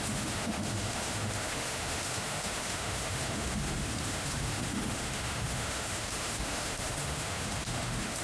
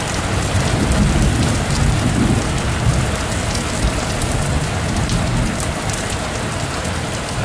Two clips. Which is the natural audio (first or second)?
second